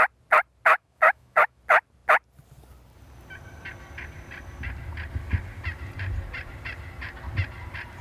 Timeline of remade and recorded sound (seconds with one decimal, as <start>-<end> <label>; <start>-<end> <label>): 0.0-0.7 recorded; 0.7-1.6 remade; 1.6-8.0 recorded